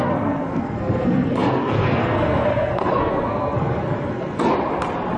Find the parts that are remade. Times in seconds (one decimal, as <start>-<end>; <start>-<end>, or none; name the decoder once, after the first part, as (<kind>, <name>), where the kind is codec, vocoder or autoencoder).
0.0-4.5 (codec, SNAC)